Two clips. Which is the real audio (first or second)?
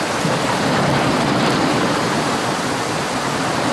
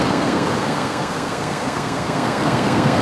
first